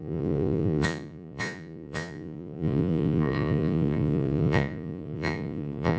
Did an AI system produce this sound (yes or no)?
yes